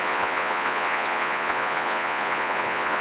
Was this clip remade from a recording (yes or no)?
yes